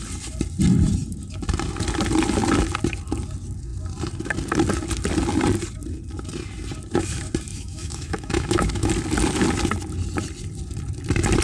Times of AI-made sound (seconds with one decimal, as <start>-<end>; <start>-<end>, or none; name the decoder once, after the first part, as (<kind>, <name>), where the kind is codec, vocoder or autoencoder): 7.5-8.9 (autoencoder, DAC-VAE)